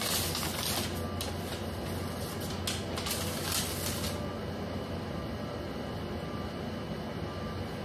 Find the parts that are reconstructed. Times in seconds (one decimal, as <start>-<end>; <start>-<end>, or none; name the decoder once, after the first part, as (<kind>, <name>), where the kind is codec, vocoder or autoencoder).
none

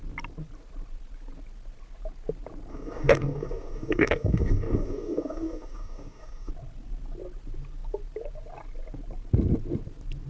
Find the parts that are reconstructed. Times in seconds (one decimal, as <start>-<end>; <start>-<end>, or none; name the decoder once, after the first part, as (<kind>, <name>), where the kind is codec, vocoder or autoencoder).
2.7-6.5 (codec, DAC)

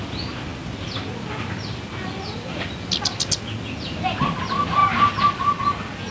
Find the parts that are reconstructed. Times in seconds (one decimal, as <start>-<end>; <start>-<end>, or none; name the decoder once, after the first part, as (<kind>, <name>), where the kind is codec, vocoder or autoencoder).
none

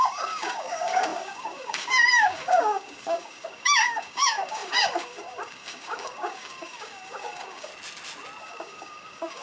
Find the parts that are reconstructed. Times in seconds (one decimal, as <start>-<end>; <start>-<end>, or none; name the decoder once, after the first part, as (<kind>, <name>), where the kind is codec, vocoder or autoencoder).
0.0-7.7 (codec, DAC); 8.4-9.4